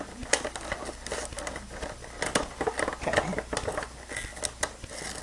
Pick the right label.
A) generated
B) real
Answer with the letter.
B